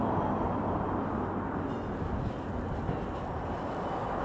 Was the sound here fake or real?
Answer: real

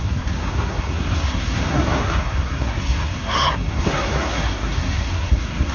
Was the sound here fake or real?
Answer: fake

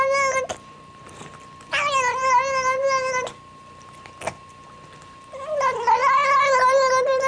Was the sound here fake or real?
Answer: real